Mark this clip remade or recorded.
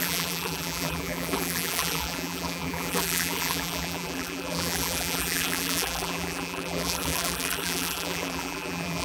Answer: remade